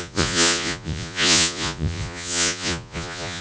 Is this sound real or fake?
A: fake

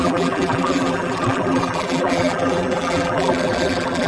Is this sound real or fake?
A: fake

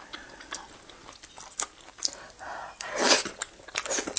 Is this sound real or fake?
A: real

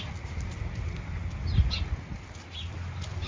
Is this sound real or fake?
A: real